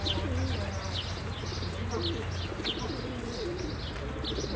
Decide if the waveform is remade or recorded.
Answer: recorded